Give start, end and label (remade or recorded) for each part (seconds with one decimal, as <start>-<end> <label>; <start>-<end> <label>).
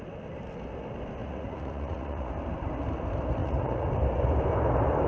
0.0-1.2 recorded; 1.2-2.3 remade; 2.3-3.4 recorded; 3.4-3.9 remade; 3.9-5.1 recorded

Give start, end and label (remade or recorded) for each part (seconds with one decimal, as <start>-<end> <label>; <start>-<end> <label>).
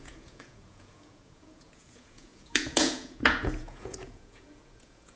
0.0-5.2 remade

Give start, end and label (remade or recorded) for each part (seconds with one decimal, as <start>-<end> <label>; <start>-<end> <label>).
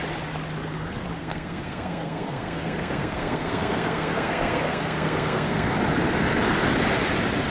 0.0-1.2 recorded; 1.2-5.7 remade; 5.7-7.5 recorded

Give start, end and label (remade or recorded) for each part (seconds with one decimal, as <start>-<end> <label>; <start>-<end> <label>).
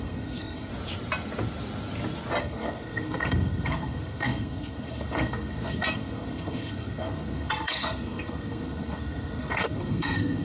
0.0-0.7 remade; 0.7-2.4 recorded; 2.4-10.4 remade